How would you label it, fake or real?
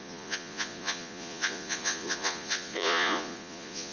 fake